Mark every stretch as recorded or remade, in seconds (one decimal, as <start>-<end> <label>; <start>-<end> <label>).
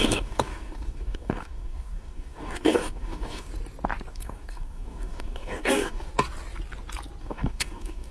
0.0-3.5 remade; 3.5-4.1 recorded; 4.1-6.1 remade; 6.1-7.2 recorded; 7.2-8.1 remade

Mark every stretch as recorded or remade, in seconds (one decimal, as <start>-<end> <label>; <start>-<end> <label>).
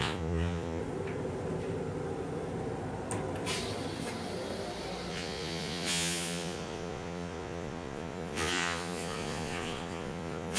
0.0-0.8 remade; 0.8-5.1 recorded; 5.1-10.6 remade